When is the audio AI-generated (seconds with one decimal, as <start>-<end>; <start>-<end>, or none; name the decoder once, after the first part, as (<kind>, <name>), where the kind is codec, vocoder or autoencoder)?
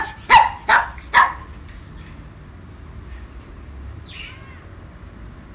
none